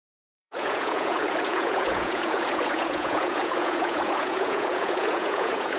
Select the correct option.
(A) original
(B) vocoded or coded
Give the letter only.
B